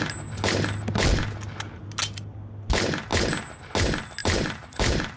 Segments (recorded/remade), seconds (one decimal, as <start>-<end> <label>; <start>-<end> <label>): 0.0-4.2 recorded; 4.2-5.2 remade

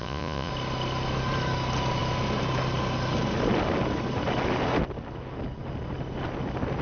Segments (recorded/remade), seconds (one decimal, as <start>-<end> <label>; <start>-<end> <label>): 0.0-0.5 remade; 0.5-6.8 recorded

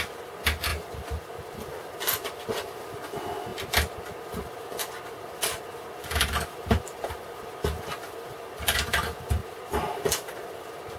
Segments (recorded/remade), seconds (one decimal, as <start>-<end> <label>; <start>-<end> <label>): 0.0-11.0 recorded

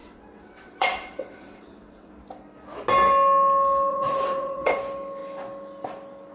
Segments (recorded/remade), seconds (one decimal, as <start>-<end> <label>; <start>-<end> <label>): 0.0-2.1 remade; 2.1-3.9 recorded; 3.9-4.8 remade; 4.8-6.3 recorded

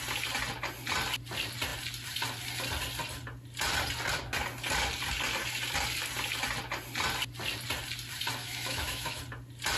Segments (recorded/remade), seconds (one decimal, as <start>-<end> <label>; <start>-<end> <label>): 0.0-8.4 recorded; 8.4-9.2 remade; 9.2-9.8 recorded